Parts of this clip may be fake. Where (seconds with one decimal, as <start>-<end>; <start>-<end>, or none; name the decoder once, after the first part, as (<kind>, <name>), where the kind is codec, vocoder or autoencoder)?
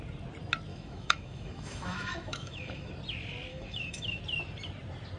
0.7-2.9 (autoencoder, DAC-VAE); 3.5-4.2